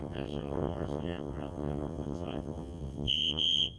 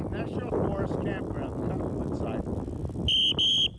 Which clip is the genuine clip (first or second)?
second